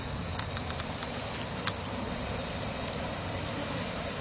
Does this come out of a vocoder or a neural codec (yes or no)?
no